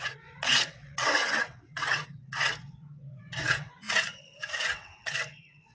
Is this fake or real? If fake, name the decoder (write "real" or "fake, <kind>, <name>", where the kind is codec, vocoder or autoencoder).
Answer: fake, vocoder, WaveNeXt